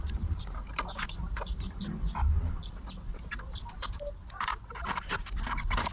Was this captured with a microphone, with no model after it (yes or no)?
no